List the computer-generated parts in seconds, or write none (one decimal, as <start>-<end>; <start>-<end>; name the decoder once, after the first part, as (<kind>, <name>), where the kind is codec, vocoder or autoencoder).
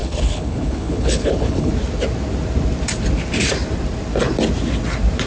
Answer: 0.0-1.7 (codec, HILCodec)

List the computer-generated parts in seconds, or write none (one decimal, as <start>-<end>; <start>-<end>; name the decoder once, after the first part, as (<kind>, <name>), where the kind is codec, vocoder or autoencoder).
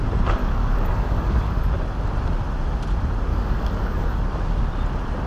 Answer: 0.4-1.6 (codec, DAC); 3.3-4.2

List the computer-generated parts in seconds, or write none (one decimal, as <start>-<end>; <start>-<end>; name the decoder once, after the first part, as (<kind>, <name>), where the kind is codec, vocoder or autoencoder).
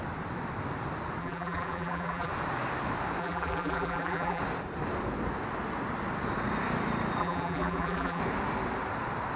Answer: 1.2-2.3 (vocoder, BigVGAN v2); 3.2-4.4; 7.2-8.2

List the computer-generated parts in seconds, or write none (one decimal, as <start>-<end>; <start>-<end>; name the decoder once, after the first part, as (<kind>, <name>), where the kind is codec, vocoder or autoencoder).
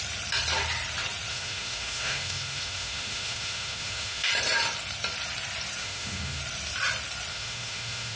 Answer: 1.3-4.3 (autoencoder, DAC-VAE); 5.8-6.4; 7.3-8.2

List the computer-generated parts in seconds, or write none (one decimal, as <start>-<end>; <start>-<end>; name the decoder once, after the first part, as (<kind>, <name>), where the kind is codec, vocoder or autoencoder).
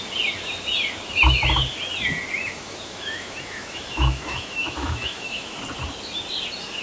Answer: 2.4-5.6 (autoencoder, DAC-VAE)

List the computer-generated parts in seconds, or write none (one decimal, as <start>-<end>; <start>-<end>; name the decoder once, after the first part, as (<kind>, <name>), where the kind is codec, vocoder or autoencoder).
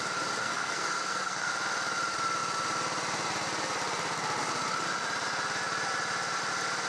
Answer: 0.4-1.5 (codec, SNAC)